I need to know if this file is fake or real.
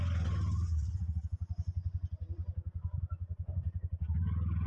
real